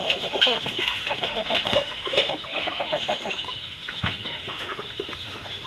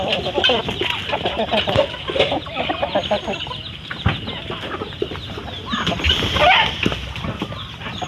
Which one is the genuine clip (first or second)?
second